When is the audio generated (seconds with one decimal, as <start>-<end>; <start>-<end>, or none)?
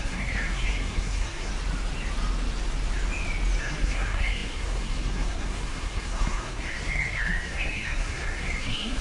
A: 0.0-1.5; 3.6-9.0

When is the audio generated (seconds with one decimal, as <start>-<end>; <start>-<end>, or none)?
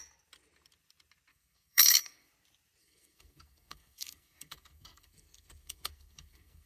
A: 1.3-2.3; 2.8-6.7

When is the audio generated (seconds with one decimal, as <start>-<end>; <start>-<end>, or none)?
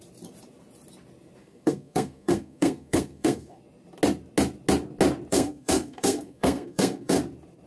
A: 1.4-3.6; 5.3-7.2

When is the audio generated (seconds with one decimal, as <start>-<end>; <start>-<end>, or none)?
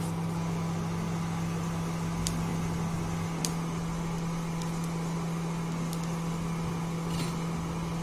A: none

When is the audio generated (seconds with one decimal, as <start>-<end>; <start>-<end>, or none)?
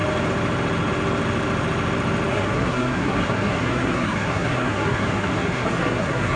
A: 2.3-6.4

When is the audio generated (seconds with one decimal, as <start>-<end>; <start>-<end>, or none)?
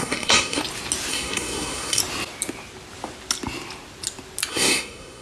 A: 0.0-0.6; 1.1-2.0; 4.5-5.2